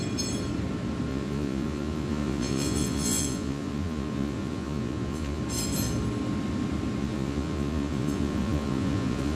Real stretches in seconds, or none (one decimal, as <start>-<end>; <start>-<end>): 0.0-1.1; 5.4-7.0